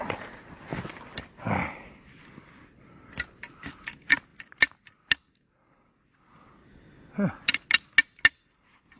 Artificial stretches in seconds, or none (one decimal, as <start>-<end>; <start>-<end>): none